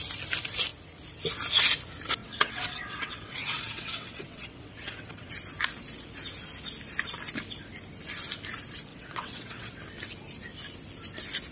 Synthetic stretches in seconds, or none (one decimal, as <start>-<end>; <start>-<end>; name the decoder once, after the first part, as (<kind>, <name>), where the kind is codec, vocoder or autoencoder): 2.2-5.3 (vocoder, WaveNeXt); 8.9-9.8